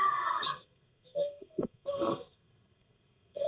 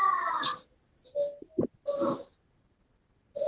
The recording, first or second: second